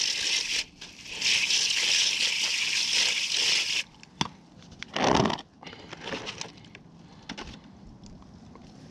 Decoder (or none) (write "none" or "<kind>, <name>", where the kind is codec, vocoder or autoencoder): none